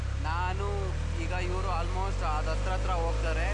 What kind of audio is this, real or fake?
real